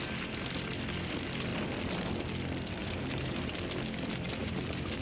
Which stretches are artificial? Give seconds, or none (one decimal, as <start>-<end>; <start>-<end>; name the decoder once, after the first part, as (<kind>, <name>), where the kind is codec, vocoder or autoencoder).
2.8-3.5 (vocoder, BigVGAN v2); 4.4-5.0

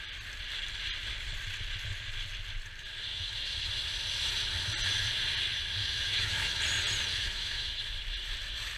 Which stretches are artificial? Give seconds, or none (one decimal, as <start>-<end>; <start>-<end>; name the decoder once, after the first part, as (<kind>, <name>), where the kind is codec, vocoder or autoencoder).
3.1-3.7 (autoencoder, DAC-VAE); 5.8-6.6; 7.1-7.8

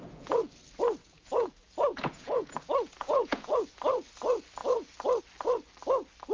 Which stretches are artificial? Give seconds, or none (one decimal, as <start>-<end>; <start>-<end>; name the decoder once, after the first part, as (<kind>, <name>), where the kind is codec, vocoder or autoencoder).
0.0-0.5 (vocoder, Vocos); 1.0-3.7

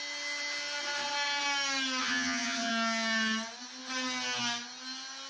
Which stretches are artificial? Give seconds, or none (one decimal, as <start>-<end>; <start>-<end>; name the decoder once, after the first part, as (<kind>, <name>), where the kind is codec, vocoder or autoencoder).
2.0-2.7 (vocoder, HiFi-GAN)

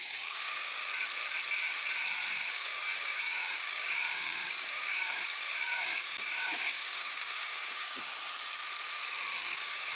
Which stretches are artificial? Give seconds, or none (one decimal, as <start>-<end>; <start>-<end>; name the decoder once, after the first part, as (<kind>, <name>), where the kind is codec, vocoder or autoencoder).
0.0-0.8 (codec, DAC); 2.3-8.1; 9.4-10.0

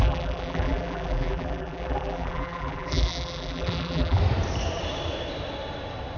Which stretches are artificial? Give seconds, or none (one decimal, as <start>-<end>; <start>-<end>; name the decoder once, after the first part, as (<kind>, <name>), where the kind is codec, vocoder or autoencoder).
0.0-4.2 (vocoder, BigVGAN v2)